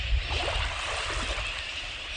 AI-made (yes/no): no